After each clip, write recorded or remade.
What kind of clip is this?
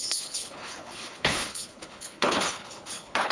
remade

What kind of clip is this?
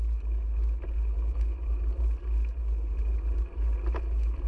recorded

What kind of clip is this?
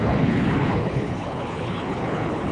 remade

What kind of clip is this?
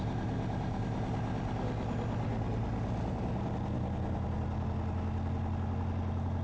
recorded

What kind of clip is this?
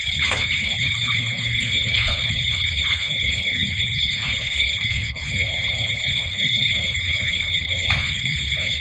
remade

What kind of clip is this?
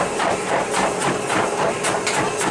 recorded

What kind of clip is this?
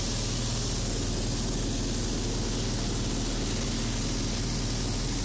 recorded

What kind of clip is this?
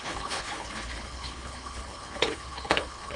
remade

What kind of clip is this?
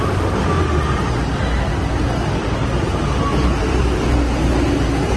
recorded